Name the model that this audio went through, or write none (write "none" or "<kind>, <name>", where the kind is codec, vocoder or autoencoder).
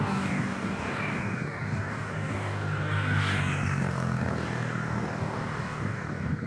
codec, DAC